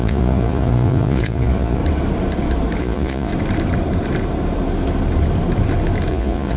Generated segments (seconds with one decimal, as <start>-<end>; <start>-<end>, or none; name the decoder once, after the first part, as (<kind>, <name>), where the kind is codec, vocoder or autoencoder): 0.0-1.8 (vocoder, Vocos); 2.8-3.3; 6.1-6.6